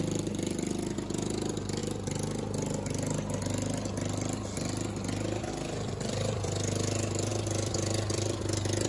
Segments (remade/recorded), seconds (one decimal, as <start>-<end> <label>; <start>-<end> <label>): 0.0-1.8 remade; 1.8-5.5 recorded; 5.5-8.9 remade